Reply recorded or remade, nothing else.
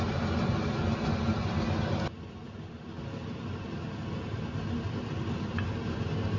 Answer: recorded